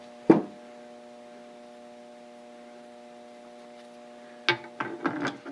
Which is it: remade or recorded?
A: recorded